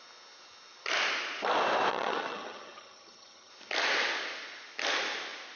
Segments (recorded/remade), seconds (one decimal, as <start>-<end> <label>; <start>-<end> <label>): 0.0-1.9 recorded; 1.9-3.5 remade; 3.5-5.6 recorded